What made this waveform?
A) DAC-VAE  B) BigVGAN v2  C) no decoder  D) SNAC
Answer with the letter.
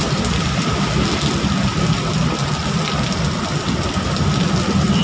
C